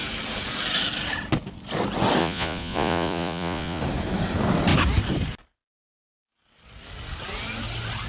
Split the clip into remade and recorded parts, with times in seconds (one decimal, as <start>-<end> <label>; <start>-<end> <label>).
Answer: 0.0-2.2 recorded; 2.2-3.8 remade; 3.8-8.1 recorded